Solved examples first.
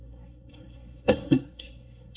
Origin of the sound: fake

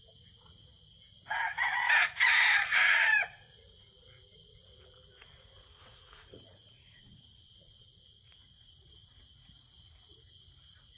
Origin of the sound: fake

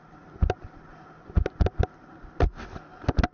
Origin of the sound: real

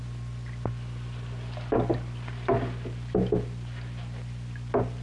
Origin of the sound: real